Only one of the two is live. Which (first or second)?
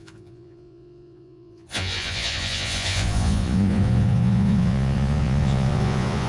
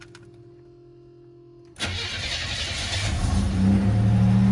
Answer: second